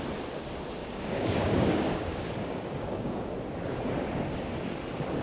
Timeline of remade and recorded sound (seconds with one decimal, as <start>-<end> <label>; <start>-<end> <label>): 0.0-0.8 recorded; 0.8-3.3 remade; 3.3-5.2 recorded